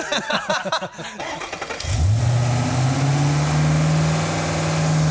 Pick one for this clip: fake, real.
real